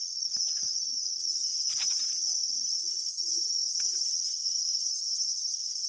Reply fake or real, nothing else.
fake